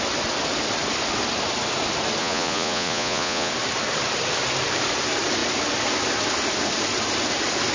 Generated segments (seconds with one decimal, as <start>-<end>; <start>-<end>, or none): 2.2-3.5